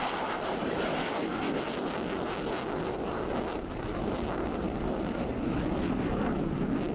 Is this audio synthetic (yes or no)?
no